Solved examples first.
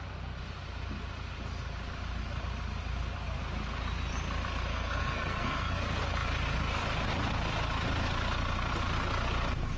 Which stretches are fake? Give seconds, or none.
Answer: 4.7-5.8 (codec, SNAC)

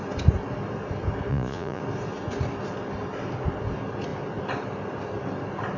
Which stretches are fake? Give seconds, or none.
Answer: 1.3-1.8 (vocoder, Vocos)

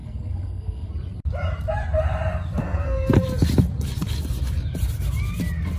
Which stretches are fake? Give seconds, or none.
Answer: 0.0-0.9 (codec, SNAC); 2.6-3.1

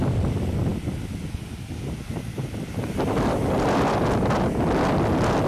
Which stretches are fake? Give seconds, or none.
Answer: none

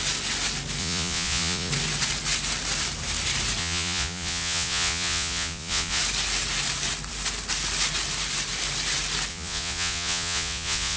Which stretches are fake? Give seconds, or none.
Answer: 0.8-1.7 (vocoder, Vocos); 3.6-6.0; 9.3-11.0